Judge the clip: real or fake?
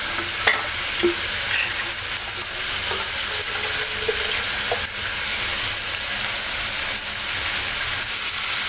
real